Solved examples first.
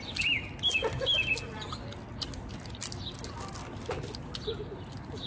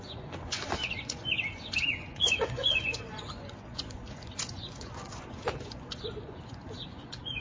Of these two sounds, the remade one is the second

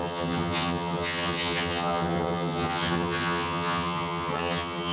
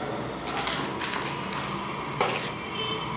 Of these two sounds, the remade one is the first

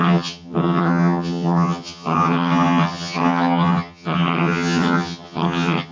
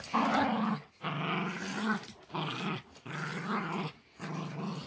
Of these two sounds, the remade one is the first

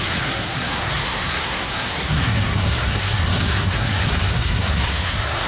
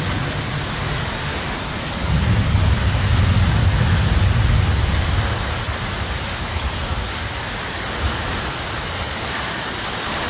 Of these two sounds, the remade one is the first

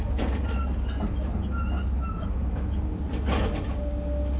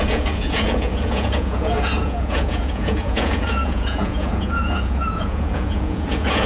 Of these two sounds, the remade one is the second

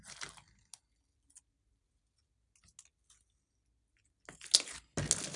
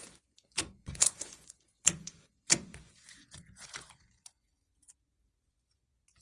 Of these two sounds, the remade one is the second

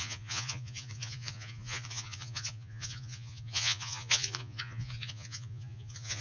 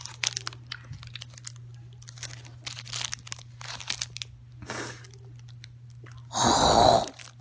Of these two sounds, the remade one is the first